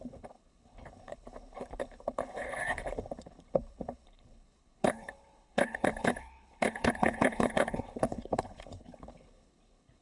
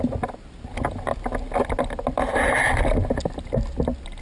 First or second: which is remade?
first